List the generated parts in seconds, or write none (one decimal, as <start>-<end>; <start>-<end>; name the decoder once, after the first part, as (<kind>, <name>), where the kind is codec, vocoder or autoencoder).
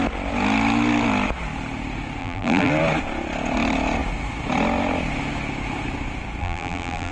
2.2-2.7 (vocoder, BigVGAN v2); 6.4-7.1